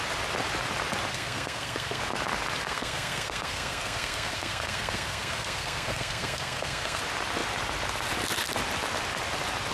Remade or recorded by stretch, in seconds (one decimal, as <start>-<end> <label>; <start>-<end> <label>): 0.0-1.1 recorded; 1.1-2.0 remade; 2.0-2.6 recorded; 2.6-7.0 remade; 7.0-9.7 recorded